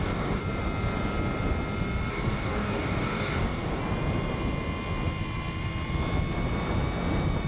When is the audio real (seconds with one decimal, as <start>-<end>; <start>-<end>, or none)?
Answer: 0.4-2.1; 3.8-7.5